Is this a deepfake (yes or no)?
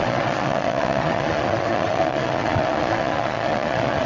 yes